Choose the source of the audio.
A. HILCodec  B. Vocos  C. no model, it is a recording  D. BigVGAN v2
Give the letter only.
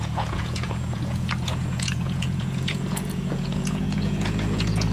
B